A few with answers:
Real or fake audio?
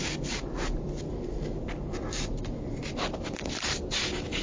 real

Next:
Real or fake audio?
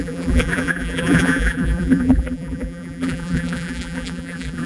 fake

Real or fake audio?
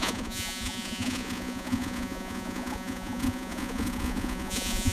fake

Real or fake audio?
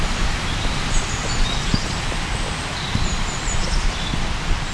fake